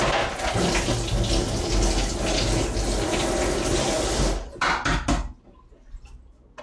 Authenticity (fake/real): real